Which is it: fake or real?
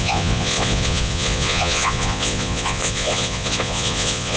fake